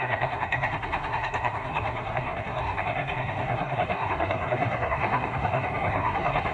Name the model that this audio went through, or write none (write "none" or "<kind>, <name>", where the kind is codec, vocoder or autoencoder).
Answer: codec, SNAC